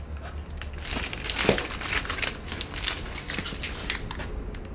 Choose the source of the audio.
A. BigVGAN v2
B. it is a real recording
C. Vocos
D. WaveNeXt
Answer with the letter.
B